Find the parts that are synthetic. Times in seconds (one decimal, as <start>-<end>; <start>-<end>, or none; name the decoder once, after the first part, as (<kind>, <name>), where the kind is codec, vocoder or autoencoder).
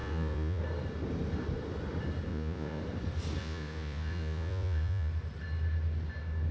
0.0-0.6 (vocoder, Vocos); 2.3-2.8; 3.4-5.1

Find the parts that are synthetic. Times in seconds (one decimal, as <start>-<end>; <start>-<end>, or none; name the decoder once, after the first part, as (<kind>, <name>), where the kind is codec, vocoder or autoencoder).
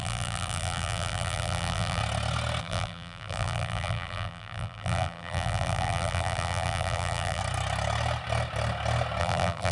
0.0-2.0 (vocoder, BigVGAN v2); 2.6-7.4; 9.2-9.7